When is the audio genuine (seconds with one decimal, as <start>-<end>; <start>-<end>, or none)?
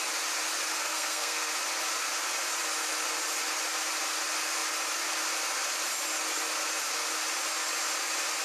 0.0-0.7; 1.5-8.4